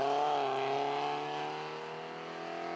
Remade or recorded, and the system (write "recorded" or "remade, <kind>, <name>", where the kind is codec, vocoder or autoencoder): recorded